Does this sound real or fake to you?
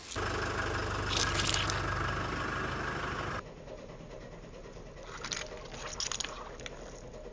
real